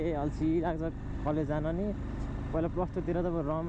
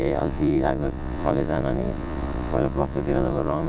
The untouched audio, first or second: first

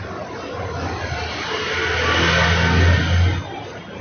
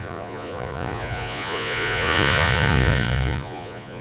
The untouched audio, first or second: first